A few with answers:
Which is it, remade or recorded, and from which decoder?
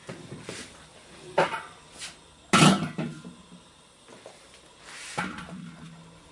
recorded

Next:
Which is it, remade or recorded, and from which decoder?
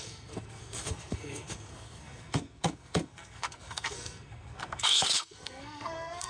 remade, codec, SNAC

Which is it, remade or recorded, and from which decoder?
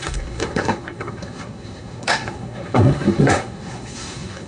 remade, codec, SNAC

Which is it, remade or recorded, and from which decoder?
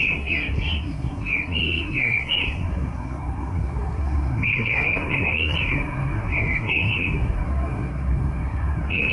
remade, codec, SNAC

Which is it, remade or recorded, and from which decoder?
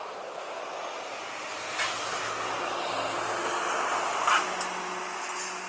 recorded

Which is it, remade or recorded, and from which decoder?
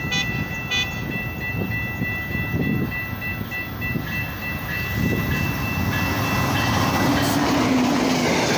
recorded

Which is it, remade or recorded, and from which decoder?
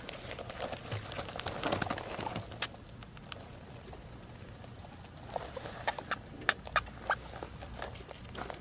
recorded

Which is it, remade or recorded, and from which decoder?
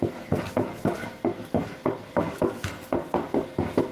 remade, codec, SNAC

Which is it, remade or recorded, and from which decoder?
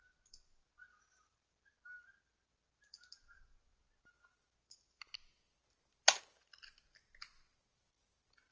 recorded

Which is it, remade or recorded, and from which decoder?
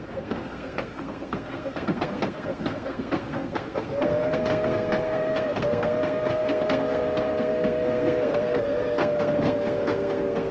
remade, codec, SNAC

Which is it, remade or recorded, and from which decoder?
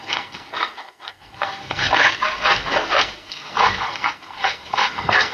remade, codec, SNAC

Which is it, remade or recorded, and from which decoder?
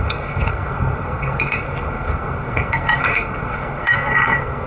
remade, codec, SNAC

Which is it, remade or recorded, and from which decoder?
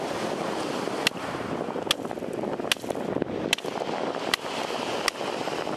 recorded